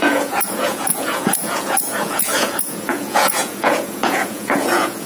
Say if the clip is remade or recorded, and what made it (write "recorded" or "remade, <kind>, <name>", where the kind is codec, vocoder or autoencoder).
remade, vocoder, Vocos